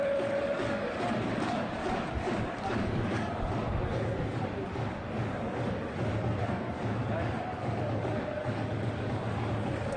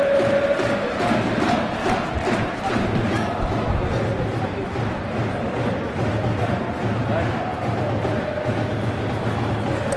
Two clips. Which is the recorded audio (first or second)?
second